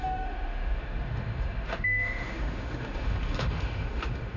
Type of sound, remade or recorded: remade